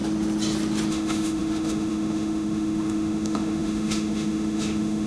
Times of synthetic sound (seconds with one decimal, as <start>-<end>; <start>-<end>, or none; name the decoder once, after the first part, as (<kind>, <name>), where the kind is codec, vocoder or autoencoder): 0.9-5.1 (autoencoder, DAC-VAE)